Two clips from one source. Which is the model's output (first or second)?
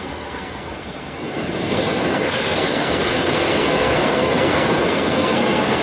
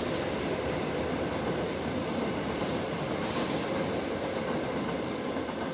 first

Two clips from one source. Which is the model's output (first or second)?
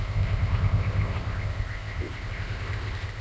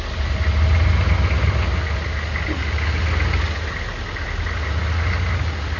first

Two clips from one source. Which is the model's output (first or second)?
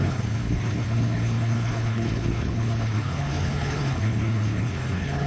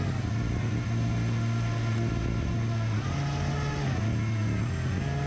first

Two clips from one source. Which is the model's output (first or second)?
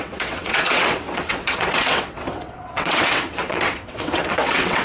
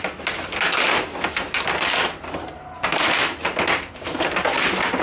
first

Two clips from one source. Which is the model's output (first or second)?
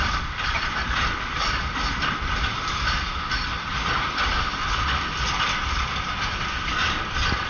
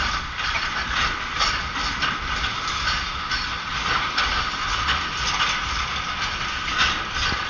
first